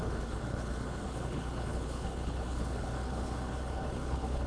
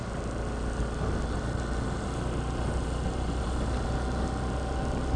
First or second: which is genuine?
second